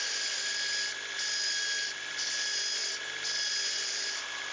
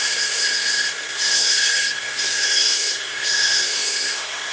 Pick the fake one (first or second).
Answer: second